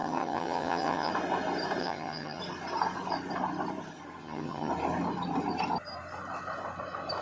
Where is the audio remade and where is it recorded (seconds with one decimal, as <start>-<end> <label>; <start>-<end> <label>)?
0.0-1.1 remade; 1.1-1.8 recorded; 1.8-2.4 remade; 2.4-4.2 recorded; 4.2-4.7 remade; 4.7-7.2 recorded